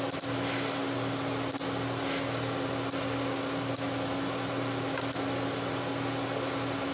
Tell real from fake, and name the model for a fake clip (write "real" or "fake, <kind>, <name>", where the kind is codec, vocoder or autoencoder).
real